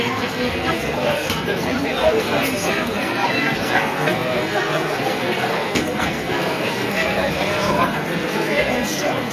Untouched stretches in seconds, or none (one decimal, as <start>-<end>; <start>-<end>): none

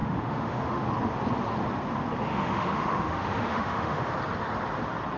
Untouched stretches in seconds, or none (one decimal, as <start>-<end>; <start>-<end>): 0.9-2.3; 4.1-5.2

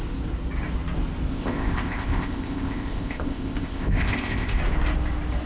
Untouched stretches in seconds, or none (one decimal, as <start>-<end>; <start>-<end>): 0.0-1.3; 4.6-5.5

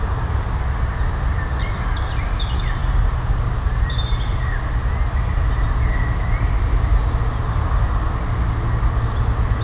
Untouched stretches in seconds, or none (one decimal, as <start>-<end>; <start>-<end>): 0.0-9.6

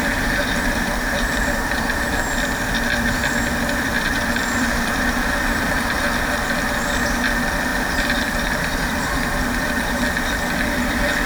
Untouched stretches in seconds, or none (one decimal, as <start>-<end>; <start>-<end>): 7.7-8.2